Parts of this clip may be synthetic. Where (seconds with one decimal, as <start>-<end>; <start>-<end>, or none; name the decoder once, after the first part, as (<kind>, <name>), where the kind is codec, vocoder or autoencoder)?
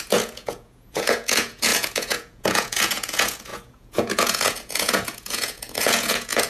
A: 0.0-6.5 (vocoder, Vocos)